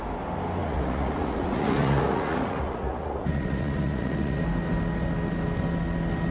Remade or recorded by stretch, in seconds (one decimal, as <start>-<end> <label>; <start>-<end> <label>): 0.0-0.6 recorded; 0.6-4.4 remade; 4.4-6.3 recorded